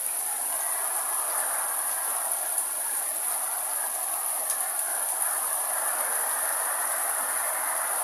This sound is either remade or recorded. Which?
recorded